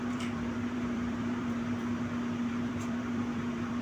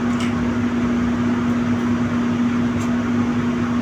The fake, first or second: first